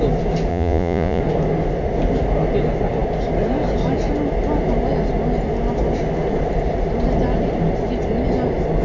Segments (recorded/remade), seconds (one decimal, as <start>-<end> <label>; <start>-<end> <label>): 0.0-0.5 recorded; 0.5-1.2 remade; 1.2-8.8 recorded